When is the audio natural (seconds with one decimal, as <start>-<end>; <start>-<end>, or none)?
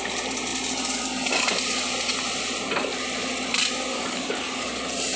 0.0-3.9; 4.8-5.2